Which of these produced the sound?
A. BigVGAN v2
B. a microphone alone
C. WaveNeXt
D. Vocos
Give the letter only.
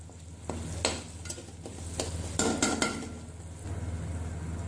B